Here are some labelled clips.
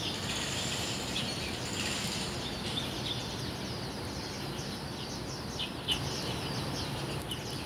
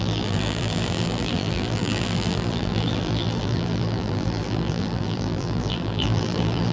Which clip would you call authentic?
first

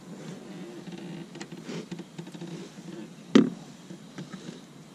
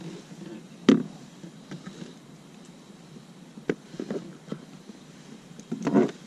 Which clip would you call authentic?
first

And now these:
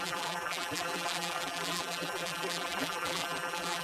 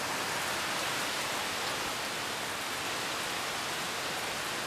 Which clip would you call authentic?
second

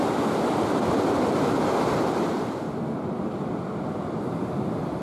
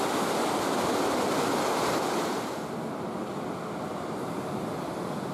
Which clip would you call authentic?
second